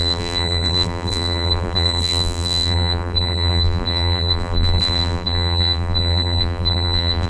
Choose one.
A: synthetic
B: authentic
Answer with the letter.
A